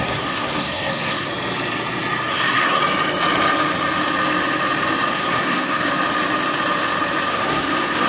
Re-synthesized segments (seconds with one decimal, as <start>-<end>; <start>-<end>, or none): 0.0-1.3; 2.3-2.8; 5.1-5.9; 7.3-8.1

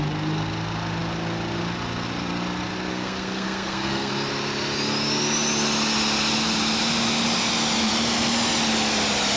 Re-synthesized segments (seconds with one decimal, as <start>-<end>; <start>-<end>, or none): 2.9-4.1

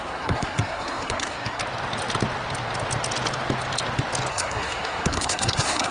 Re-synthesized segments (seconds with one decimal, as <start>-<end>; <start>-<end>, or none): 0.0-1.6; 4.3-5.9

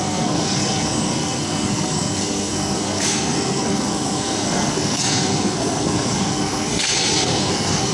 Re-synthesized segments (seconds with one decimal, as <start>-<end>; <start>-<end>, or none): 0.0-7.9

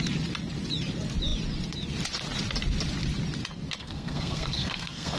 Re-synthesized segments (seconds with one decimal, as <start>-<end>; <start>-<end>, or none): 3.8-5.2

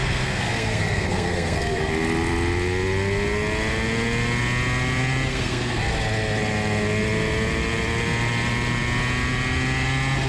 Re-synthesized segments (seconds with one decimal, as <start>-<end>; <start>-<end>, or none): 0.0-1.9; 5.3-5.9

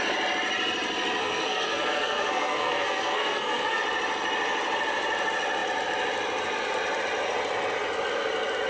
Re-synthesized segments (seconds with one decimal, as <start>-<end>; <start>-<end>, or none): 1.2-3.8

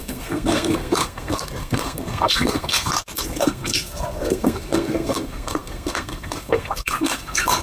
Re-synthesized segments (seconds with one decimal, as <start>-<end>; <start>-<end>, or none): 0.0-7.6